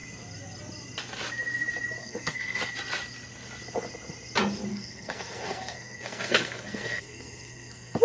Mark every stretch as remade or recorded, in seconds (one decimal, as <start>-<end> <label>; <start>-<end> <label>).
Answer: 0.0-2.0 recorded; 2.0-2.6 remade; 2.6-4.7 recorded; 4.7-8.0 remade